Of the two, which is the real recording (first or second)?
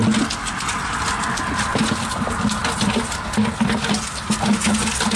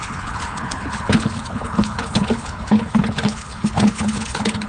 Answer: first